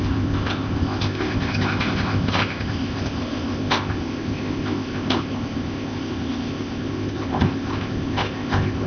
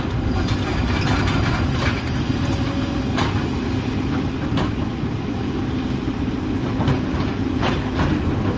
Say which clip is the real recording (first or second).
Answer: second